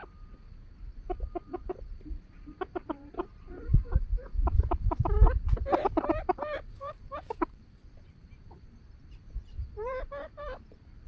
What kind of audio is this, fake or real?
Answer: fake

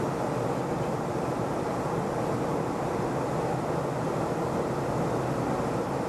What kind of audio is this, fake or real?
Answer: real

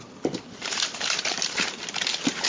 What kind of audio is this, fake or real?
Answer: fake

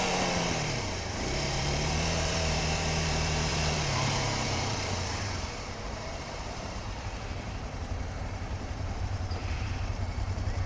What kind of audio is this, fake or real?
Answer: fake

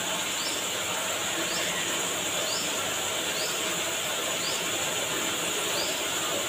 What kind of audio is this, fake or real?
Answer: real